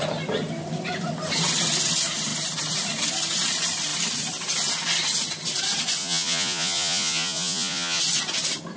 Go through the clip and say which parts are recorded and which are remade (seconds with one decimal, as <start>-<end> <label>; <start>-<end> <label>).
0.0-6.0 recorded; 6.0-8.0 remade; 8.0-8.8 recorded